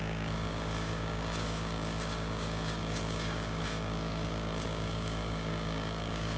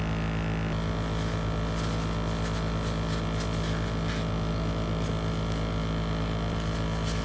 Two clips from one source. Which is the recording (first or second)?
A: second